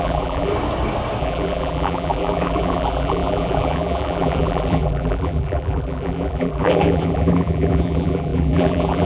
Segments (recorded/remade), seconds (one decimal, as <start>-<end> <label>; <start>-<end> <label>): 0.0-0.5 remade; 0.5-1.2 recorded; 1.2-9.1 remade

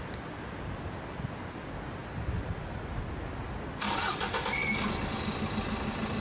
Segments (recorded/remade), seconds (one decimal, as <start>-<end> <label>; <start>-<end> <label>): 0.0-6.2 recorded

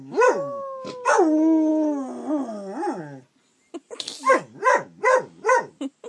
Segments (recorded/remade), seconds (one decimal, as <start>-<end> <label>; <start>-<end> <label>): 0.0-6.1 recorded

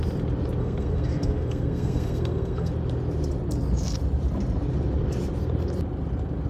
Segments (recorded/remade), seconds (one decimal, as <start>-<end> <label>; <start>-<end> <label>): 0.0-0.6 recorded; 0.6-2.7 remade; 2.7-6.5 recorded